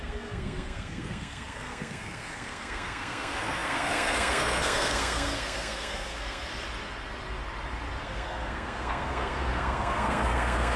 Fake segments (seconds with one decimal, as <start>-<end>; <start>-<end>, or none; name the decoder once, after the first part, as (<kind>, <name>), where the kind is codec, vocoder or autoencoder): 0.0-6.5 (codec, SNAC); 8.0-10.8